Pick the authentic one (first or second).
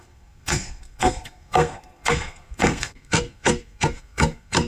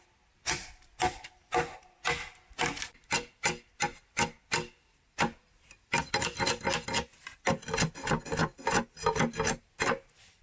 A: second